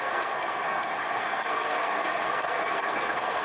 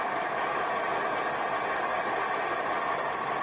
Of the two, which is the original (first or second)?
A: second